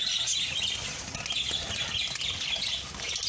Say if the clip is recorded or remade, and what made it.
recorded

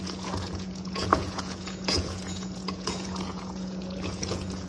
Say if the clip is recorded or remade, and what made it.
remade, vocoder, Vocos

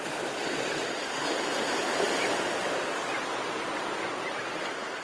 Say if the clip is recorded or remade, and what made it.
recorded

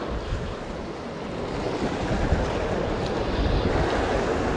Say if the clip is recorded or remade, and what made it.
recorded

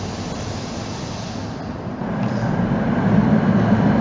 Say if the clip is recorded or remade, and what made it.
recorded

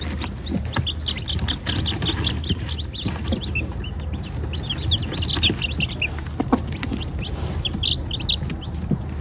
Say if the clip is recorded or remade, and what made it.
recorded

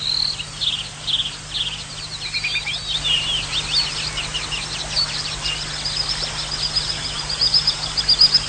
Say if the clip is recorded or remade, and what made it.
recorded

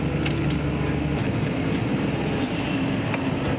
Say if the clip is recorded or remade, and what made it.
recorded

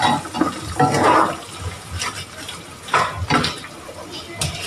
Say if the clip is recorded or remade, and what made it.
recorded